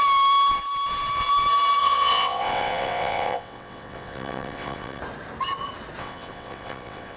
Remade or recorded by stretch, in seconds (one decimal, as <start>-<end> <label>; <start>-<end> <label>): 0.0-1.8 recorded; 1.8-5.0 remade; 5.0-6.0 recorded; 6.0-7.2 remade